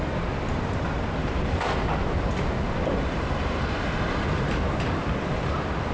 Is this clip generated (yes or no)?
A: yes